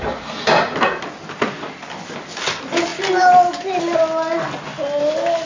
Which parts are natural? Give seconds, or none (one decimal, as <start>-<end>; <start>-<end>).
0.0-5.5

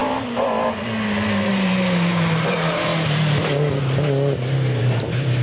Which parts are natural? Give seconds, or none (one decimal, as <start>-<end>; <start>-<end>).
2.9-4.8

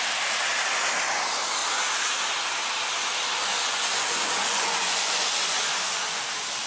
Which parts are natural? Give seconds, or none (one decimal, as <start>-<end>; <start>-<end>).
0.0-3.5; 6.2-6.7

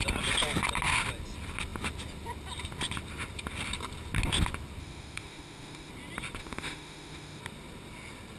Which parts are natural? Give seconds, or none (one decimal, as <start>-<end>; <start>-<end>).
0.0-4.8; 5.9-6.4; 7.4-8.4

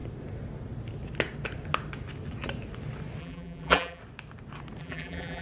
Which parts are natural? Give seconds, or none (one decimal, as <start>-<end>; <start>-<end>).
0.0-3.2; 4.0-4.8